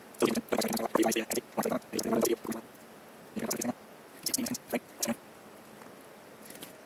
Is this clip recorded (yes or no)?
yes